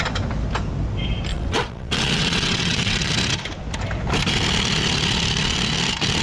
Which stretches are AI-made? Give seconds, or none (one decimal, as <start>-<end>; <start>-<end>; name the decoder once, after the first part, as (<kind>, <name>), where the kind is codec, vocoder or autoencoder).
1.3-3.1 (vocoder, WaveNeXt)